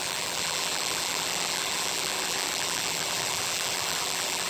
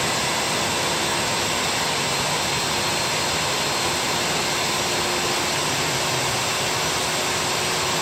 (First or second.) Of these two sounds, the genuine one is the second